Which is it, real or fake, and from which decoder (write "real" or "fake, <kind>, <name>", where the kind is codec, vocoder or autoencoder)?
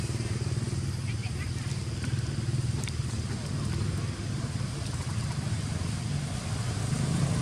fake, vocoder, BigVGAN v2